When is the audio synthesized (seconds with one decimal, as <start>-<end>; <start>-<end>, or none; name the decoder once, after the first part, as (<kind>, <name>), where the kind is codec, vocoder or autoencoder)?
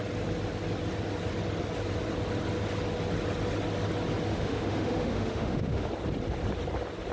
4.3-5.9 (autoencoder, DAC-VAE)